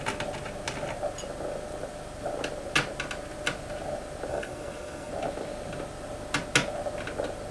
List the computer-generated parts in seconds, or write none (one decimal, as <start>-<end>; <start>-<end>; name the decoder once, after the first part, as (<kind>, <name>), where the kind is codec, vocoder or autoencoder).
4.3-5.1 (codec, SNAC)